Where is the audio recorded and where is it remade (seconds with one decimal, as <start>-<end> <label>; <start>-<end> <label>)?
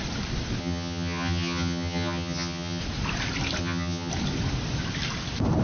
0.0-0.6 recorded; 0.6-2.8 remade; 2.8-3.6 recorded; 3.6-4.1 remade; 4.1-5.6 recorded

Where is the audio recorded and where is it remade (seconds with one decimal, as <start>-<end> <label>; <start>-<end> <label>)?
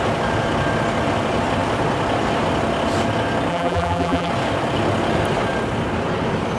0.0-3.5 recorded; 3.5-4.3 remade; 4.3-6.6 recorded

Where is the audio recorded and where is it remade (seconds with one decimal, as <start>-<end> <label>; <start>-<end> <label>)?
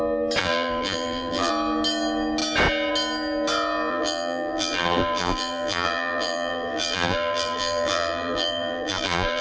0.0-0.4 recorded; 0.4-1.5 remade; 1.5-3.9 recorded; 3.9-9.4 remade